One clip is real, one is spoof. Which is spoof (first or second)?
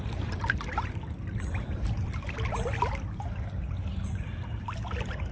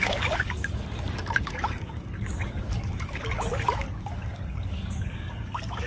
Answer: second